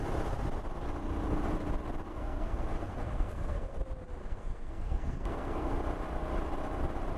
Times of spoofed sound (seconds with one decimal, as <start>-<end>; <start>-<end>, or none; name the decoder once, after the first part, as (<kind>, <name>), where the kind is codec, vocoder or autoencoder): 2.1-3.8 (codec, SNAC); 4.2-5.8